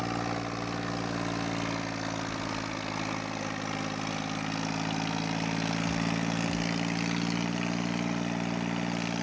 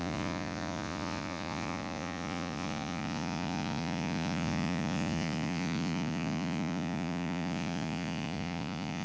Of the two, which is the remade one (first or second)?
second